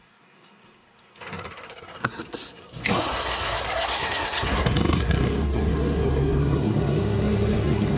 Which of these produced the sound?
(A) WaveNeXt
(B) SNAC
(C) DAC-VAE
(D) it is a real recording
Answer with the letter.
B